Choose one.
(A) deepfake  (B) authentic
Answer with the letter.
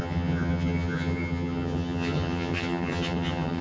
A